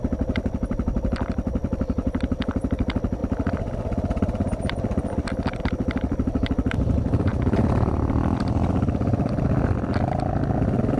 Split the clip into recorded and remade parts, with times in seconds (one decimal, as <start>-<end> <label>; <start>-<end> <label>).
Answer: 0.0-7.3 remade; 7.3-8.7 recorded; 8.7-11.0 remade